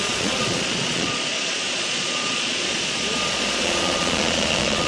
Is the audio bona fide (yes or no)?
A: no